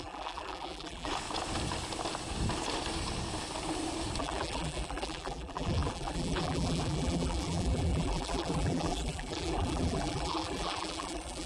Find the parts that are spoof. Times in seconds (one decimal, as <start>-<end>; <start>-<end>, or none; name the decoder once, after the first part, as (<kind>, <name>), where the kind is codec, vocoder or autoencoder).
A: 0.0-1.1 (vocoder, BigVGAN v2); 4.2-11.5